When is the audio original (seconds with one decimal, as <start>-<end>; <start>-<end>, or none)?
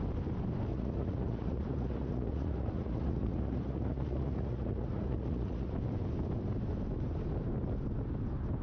0.0-0.7; 5.7-8.6